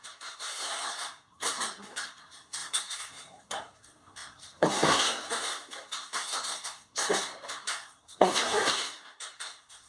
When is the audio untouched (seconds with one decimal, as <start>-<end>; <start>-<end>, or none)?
none